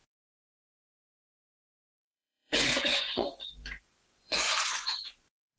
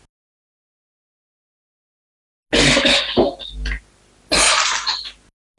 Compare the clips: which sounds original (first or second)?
second